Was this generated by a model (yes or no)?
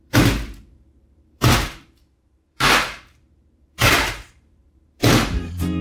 yes